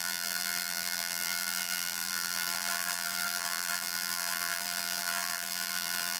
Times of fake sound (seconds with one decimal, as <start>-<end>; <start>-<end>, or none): 0.0-6.2